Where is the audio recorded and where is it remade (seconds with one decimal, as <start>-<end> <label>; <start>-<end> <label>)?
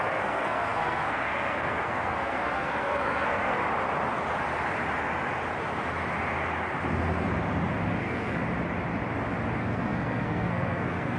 0.0-3.6 remade; 3.6-8.0 recorded; 8.0-8.4 remade; 8.4-9.6 recorded; 9.6-11.2 remade